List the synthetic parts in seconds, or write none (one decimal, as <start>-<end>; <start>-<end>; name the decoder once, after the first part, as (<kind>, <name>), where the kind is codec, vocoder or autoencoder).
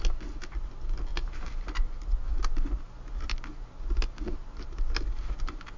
none